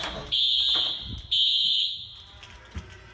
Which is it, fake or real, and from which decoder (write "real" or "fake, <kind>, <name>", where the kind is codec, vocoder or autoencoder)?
real